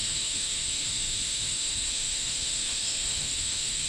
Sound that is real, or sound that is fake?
fake